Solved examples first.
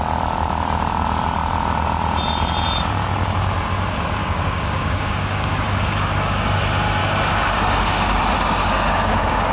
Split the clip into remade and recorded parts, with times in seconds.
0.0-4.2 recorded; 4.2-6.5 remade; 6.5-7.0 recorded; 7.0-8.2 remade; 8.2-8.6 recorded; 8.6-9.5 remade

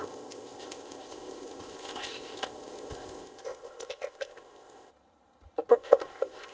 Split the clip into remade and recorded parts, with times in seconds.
0.0-4.9 remade; 4.9-5.7 recorded; 5.7-6.5 remade

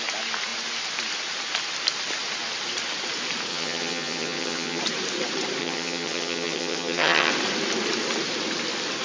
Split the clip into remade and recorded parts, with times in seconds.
0.0-3.5 recorded; 3.5-4.8 remade; 4.8-5.6 recorded; 5.6-7.3 remade; 7.3-9.0 recorded